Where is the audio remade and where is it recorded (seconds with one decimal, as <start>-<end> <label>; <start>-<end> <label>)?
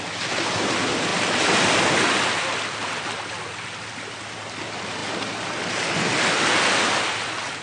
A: 0.0-7.6 recorded